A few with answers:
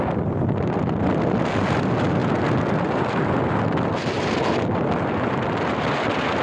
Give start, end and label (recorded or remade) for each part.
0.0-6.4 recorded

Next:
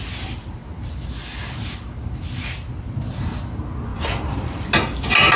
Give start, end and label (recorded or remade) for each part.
0.0-3.9 recorded; 3.9-4.6 remade; 4.6-5.4 recorded

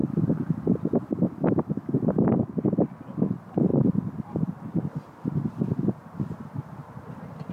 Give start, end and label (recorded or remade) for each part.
0.0-2.1 remade; 2.1-7.5 recorded